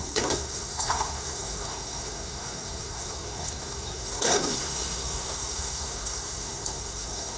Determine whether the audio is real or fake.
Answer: fake